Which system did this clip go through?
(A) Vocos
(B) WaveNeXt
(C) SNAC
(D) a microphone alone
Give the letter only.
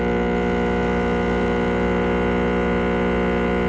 D